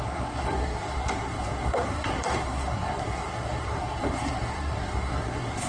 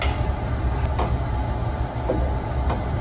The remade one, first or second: first